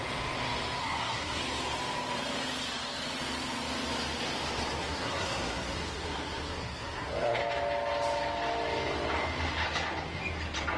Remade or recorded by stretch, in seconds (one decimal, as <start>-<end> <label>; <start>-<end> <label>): 0.0-0.8 recorded; 0.8-1.4 remade; 1.4-4.8 recorded; 4.8-7.4 remade; 7.4-10.8 recorded